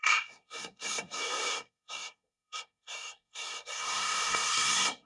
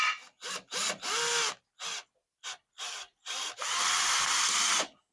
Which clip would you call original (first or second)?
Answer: second